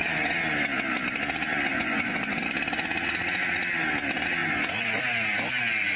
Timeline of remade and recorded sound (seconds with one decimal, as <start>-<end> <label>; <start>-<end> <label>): 0.0-1.7 recorded; 1.7-2.4 remade; 2.4-4.4 recorded; 4.4-5.0 remade; 5.0-6.0 recorded